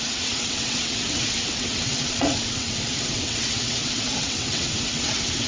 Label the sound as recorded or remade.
remade